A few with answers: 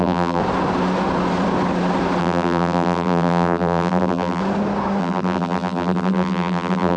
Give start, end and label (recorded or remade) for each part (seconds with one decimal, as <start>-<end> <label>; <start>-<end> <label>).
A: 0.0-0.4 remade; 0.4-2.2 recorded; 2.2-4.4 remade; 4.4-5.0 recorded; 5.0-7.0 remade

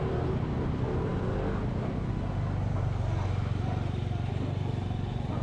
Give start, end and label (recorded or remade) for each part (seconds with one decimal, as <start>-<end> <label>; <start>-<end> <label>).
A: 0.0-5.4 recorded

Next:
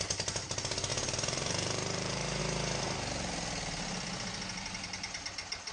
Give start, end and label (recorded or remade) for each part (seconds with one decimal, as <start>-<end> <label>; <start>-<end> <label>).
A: 0.0-0.9 recorded; 0.9-2.4 remade; 2.4-5.7 recorded

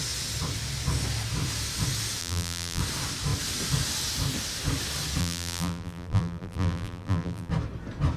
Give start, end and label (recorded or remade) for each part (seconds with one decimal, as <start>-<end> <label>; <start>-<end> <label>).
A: 0.0-2.2 recorded; 2.2-2.8 remade; 2.8-5.2 recorded; 5.2-7.5 remade; 7.5-8.2 recorded

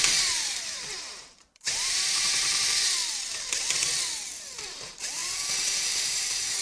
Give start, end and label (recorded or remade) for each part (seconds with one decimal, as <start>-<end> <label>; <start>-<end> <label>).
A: 0.0-3.0 remade; 3.0-4.8 recorded; 4.8-5.2 remade; 5.2-6.0 recorded; 6.0-6.6 remade

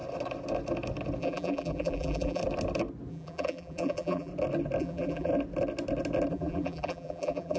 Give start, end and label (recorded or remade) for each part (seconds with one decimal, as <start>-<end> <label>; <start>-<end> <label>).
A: 0.0-1.2 recorded; 1.2-2.4 remade; 2.4-3.1 recorded; 3.1-4.3 remade; 4.3-4.8 recorded; 4.8-5.3 remade; 5.3-6.3 recorded; 6.3-7.6 remade

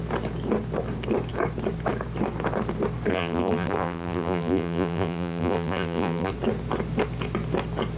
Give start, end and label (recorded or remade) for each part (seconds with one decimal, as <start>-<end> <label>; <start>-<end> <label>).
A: 0.0-3.1 recorded; 3.1-6.3 remade; 6.3-8.0 recorded